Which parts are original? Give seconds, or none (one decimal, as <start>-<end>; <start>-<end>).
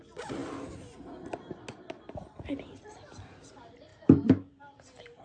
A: 0.0-3.9; 4.5-5.2